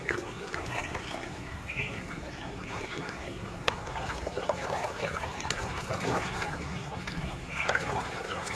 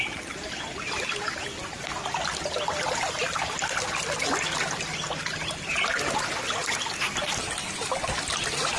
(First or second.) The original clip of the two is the second